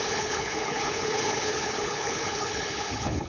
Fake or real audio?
fake